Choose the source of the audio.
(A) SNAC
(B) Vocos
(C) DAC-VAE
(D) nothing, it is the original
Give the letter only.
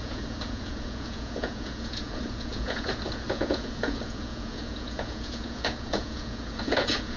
B